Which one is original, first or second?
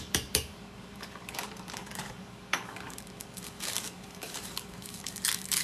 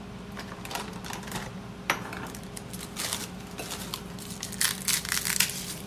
second